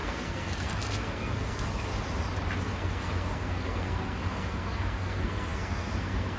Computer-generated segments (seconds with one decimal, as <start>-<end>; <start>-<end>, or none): 0.0-1.9; 2.6-6.4

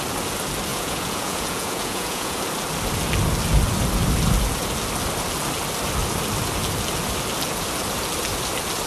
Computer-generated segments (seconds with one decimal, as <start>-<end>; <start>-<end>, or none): 0.7-2.4

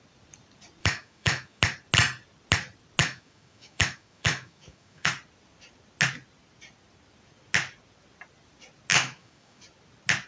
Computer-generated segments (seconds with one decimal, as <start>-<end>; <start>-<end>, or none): 0.8-1.6; 3.0-5.1; 8.9-9.6

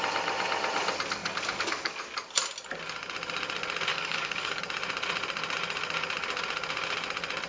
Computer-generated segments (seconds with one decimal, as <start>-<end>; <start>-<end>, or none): 1.2-2.0; 3.9-4.6